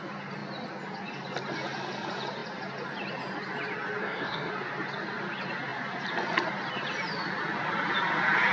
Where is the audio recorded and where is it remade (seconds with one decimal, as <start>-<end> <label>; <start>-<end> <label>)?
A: 0.0-4.0 recorded; 4.0-4.5 remade; 4.5-8.5 recorded